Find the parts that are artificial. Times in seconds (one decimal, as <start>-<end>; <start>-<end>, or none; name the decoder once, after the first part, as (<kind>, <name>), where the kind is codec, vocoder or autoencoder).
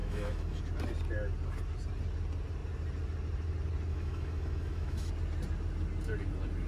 0.0-0.6 (autoencoder, DAC-VAE); 3.9-5.1